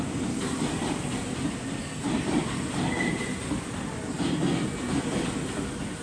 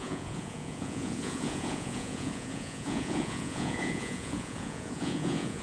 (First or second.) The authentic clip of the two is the first